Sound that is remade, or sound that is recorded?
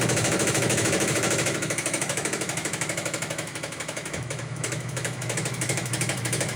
remade